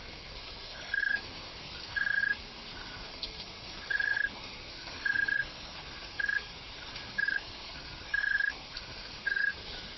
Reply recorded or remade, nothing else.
remade